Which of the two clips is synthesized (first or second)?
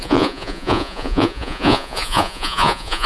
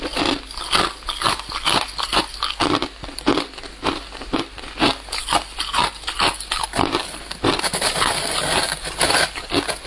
first